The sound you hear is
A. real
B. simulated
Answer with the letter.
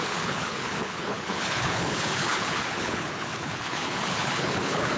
B